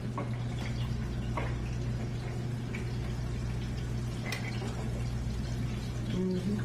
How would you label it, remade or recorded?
recorded